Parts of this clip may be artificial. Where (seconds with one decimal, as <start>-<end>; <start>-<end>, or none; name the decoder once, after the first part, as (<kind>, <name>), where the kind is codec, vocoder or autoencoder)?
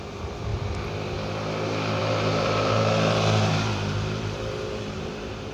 2.0-5.5 (vocoder, BigVGAN v2)